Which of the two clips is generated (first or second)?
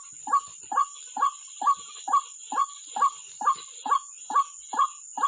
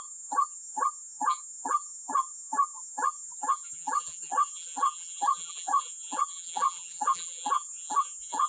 second